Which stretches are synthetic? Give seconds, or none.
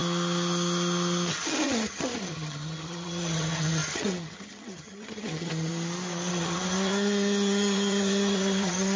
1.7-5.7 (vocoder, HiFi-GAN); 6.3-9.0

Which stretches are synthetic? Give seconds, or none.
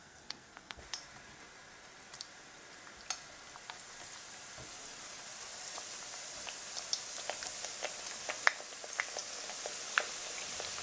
0.0-0.8 (codec, SNAC)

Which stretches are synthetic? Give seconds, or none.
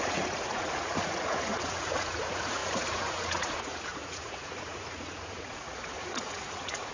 0.0-6.9 (vocoder, Vocos)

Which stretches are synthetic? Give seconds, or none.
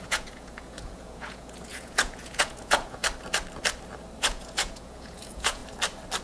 0.0-3.0 (vocoder, Vocos); 4.2-5.6